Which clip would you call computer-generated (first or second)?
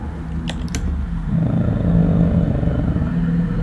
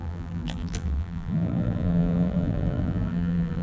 second